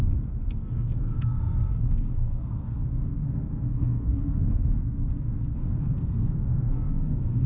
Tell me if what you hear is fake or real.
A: fake